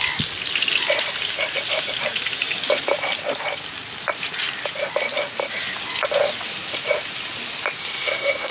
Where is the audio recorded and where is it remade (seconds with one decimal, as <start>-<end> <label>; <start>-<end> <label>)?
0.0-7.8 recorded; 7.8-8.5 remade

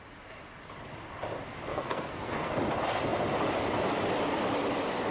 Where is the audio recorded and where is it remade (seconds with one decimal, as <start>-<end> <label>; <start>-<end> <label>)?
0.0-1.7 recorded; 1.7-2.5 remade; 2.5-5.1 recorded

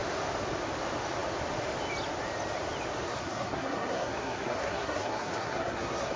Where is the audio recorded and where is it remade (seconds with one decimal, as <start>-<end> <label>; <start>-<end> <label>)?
0.0-3.0 recorded; 3.0-6.2 remade

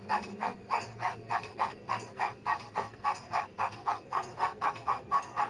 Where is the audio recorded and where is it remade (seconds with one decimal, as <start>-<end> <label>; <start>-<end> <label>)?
0.0-5.5 remade

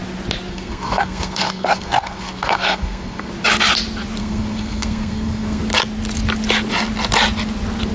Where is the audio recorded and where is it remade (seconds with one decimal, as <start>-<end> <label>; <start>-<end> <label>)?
0.0-0.5 recorded; 0.5-3.3 remade; 3.3-4.2 recorded; 4.2-5.6 remade; 5.6-7.9 recorded